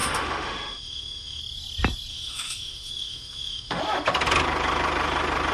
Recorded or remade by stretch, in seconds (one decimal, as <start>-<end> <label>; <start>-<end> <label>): 0.0-1.4 remade; 1.4-2.1 recorded; 2.1-3.8 remade; 3.8-5.5 recorded